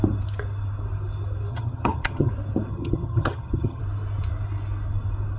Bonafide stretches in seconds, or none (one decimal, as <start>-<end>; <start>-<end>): 0.0-1.5; 2.3-2.7; 3.8-5.4